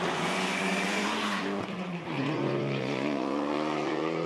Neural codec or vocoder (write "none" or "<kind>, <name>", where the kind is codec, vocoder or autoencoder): vocoder, Vocos